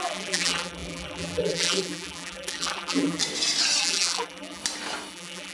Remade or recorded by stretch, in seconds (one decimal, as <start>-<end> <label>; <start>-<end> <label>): 0.0-3.2 remade; 3.2-3.8 recorded; 3.8-4.6 remade; 4.6-5.1 recorded; 5.1-5.5 remade